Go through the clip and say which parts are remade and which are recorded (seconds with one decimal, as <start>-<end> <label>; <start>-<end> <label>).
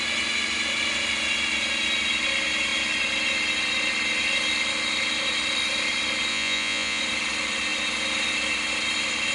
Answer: 0.0-6.3 recorded; 6.3-7.0 remade; 7.0-9.3 recorded